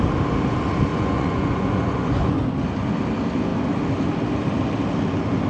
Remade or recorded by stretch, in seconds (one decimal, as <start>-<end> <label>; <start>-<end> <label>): 0.0-0.9 recorded; 0.9-2.4 remade; 2.4-5.5 recorded